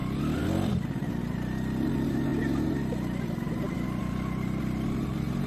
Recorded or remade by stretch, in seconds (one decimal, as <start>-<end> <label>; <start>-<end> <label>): 0.0-5.5 recorded